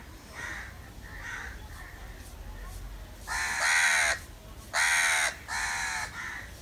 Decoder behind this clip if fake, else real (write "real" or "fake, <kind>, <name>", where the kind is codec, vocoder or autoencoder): real